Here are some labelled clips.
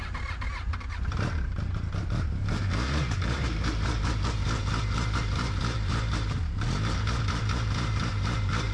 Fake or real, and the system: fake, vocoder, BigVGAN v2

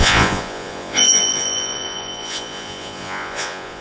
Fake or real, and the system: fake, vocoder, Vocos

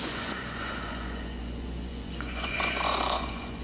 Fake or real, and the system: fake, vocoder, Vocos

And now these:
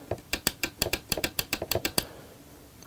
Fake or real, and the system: fake, vocoder, BigVGAN v2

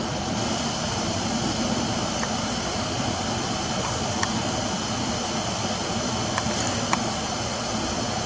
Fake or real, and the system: real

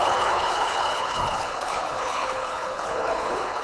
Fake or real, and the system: fake, codec, HILCodec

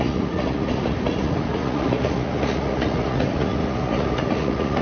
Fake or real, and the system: fake, vocoder, Vocos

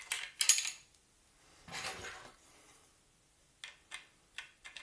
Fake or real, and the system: real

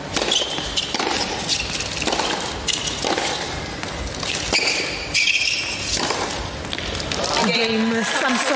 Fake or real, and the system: real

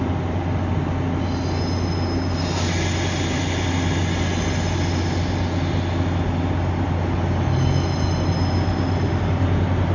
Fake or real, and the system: real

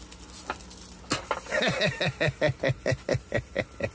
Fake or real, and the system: real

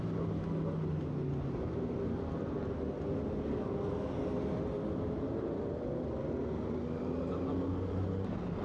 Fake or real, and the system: real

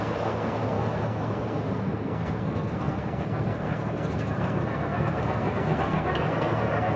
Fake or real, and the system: fake, codec, SNAC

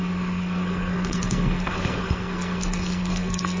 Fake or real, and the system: fake, codec, SNAC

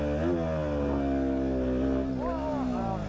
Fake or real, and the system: real